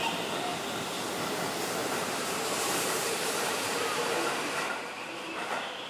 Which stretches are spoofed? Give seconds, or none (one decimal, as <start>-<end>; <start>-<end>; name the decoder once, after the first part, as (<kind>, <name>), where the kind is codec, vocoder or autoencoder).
1.8-5.3 (vocoder, BigVGAN v2)